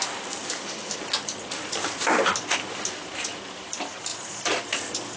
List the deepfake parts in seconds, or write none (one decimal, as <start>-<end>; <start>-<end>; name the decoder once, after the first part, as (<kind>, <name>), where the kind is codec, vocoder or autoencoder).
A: 0.0-0.4 (vocoder, BigVGAN v2); 3.5-4.1